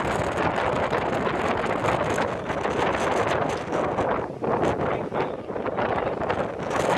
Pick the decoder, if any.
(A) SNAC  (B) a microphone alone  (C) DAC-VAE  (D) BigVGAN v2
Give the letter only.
B